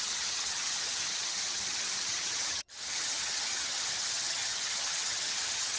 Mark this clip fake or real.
fake